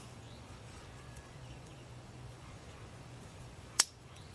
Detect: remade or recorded remade